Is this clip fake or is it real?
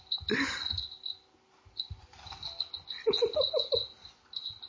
real